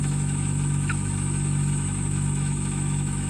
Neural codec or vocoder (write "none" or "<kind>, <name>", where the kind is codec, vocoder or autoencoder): autoencoder, DAC-VAE